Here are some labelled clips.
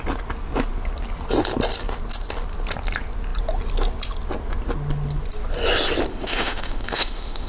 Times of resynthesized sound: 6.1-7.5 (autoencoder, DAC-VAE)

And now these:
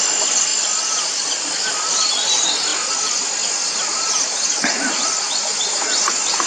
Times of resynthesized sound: none

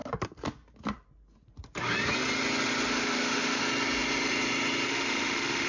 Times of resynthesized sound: 2.9-3.6 (autoencoder, DAC-VAE); 4.9-5.7

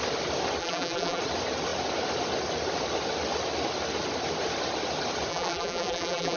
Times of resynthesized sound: 0.6-1.2 (vocoder, BigVGAN v2); 5.3-6.4

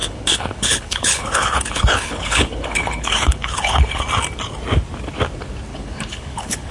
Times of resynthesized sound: 0.0-4.0 (codec, HILCodec); 5.7-6.7

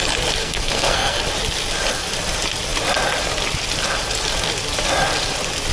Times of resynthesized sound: 0.4-1.2 (codec, SNAC)

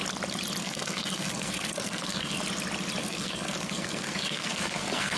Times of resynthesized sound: 0.6-2.4 (codec, SNAC); 3.0-5.2

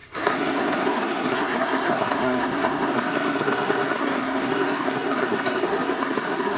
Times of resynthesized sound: 0.0-6.6 (codec, SNAC)